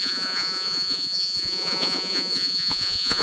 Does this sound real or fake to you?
fake